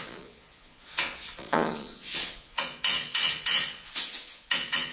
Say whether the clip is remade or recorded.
remade